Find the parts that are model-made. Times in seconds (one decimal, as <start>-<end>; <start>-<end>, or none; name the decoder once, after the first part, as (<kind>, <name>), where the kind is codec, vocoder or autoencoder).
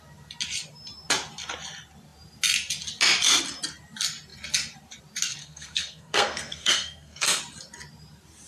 5.4-7.4 (codec, SNAC)